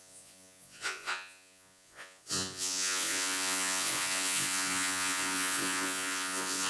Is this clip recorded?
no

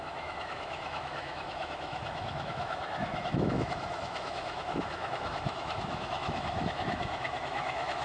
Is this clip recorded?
no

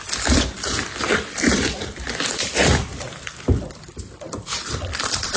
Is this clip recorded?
no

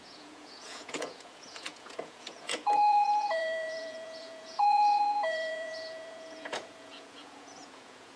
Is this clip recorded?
no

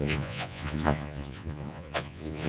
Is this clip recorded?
no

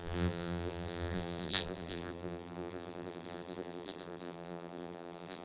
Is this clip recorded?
no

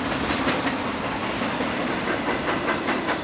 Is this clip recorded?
yes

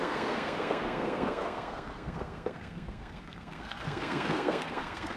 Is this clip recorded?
no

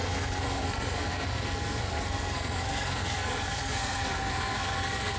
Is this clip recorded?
no